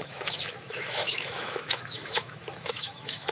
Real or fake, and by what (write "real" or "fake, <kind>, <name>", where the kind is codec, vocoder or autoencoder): fake, autoencoder, DAC-VAE